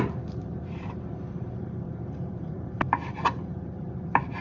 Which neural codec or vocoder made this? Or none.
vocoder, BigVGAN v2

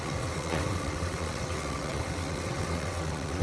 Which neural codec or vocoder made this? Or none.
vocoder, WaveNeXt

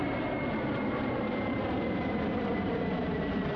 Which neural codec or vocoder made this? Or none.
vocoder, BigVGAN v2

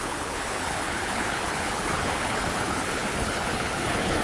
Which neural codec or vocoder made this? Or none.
codec, HILCodec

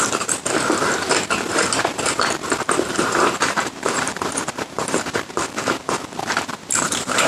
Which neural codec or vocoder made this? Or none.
vocoder, BigVGAN v2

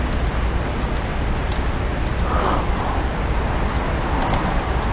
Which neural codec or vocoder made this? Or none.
none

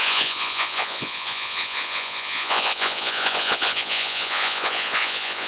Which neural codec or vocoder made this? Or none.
vocoder, Vocos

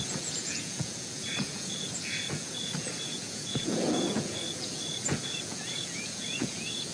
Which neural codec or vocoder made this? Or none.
vocoder, Vocos